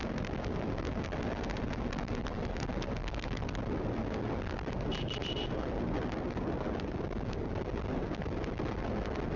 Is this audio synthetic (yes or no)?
no